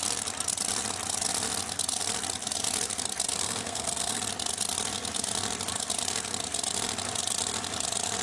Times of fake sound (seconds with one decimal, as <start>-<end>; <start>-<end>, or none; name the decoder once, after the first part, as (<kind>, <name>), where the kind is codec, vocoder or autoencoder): 3.4-4.2 (codec, SNAC)